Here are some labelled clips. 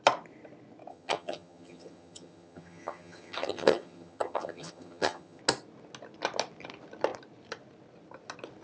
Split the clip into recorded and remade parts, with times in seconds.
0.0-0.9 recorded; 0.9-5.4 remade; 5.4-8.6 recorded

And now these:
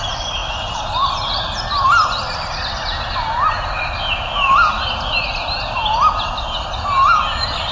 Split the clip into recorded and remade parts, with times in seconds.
0.0-7.7 recorded

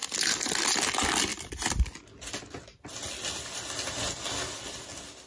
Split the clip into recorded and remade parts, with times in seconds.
0.0-5.3 recorded

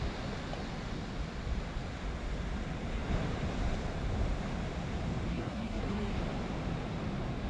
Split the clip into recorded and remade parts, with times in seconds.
0.0-5.3 recorded; 5.3-6.1 remade; 6.1-7.5 recorded

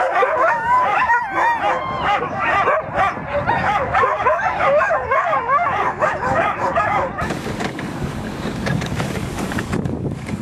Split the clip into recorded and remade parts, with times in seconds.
0.0-1.2 remade; 1.2-1.8 recorded; 1.8-2.5 remade; 2.5-3.5 recorded; 3.5-10.4 remade

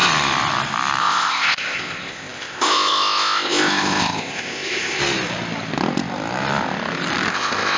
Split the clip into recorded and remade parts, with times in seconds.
0.0-1.0 recorded; 1.0-5.0 remade; 5.0-7.3 recorded; 7.3-7.8 remade

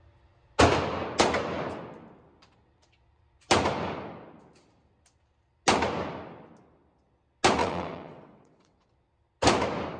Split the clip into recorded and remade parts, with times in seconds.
0.0-7.6 recorded; 7.6-8.9 remade; 8.9-10.0 recorded

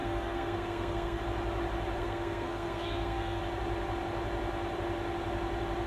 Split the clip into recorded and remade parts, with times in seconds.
0.0-1.2 remade; 1.2-2.0 recorded; 2.0-3.4 remade; 3.4-5.9 recorded